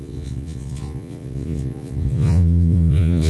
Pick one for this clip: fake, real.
fake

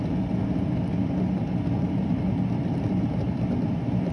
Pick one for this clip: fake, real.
real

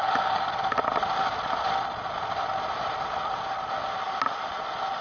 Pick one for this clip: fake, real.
real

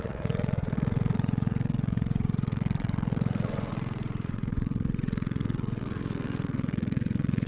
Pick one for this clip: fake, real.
fake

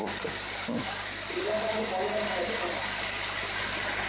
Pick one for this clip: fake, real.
real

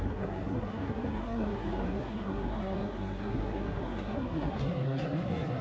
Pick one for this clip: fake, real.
fake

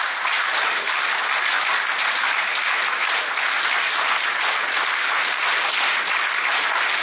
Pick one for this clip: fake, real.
real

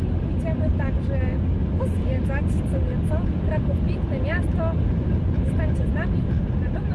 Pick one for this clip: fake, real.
real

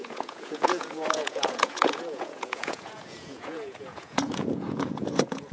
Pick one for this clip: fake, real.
fake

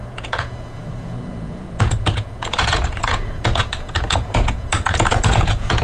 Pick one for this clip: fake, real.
fake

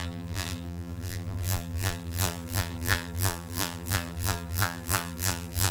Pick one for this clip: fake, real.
fake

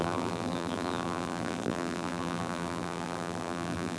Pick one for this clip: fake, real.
fake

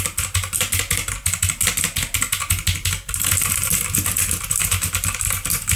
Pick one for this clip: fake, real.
real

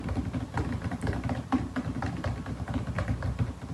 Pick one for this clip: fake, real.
real